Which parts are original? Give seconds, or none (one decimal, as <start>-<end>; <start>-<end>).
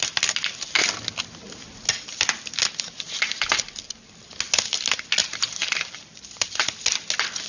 0.0-5.2; 6.7-7.5